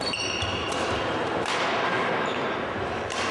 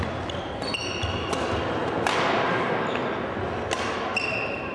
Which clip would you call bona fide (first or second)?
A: second